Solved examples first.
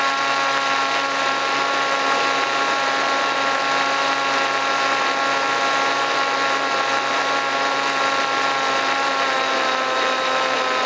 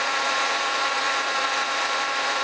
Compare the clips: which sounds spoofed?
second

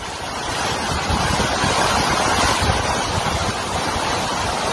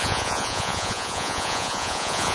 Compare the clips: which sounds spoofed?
second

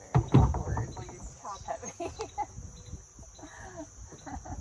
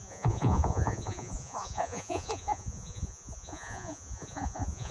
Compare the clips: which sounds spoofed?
second